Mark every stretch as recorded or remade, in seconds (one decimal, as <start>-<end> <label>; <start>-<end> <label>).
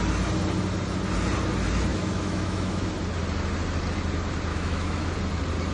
0.0-1.9 recorded; 1.9-2.9 remade; 2.9-4.5 recorded; 4.5-5.1 remade; 5.1-5.7 recorded